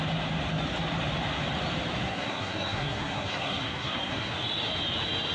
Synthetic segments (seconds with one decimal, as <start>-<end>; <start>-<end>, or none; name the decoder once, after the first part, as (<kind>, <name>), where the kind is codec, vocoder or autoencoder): 2.1-4.3 (codec, SNAC)